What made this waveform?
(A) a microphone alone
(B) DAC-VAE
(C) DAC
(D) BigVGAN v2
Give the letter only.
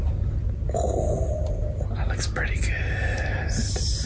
A